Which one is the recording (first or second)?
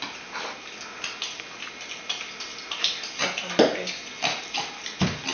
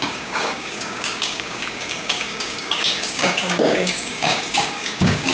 first